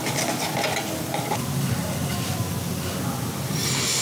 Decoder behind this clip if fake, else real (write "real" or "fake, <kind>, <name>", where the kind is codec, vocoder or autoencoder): real